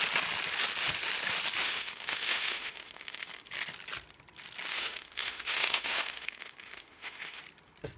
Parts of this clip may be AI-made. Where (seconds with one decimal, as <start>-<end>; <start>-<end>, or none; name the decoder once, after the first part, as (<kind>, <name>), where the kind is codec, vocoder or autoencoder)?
1.6-3.5 (autoencoder, DAC-VAE); 4.7-7.4